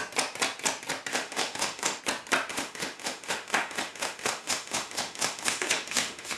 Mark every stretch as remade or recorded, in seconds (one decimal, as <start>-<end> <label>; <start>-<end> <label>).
0.0-1.1 recorded; 1.1-2.0 remade; 2.0-2.5 recorded; 2.5-6.4 remade